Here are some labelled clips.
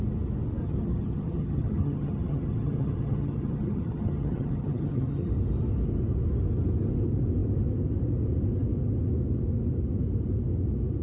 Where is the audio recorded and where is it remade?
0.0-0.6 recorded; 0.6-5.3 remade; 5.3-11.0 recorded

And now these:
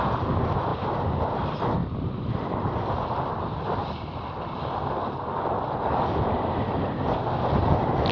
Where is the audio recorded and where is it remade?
0.0-8.1 recorded

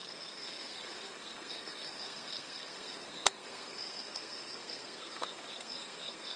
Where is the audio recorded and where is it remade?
0.0-6.4 remade